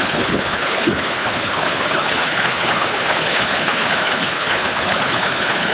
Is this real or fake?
fake